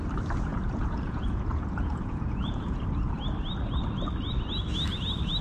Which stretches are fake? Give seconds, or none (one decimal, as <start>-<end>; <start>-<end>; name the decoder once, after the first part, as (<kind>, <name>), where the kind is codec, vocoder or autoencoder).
0.5-2.8 (vocoder, Vocos)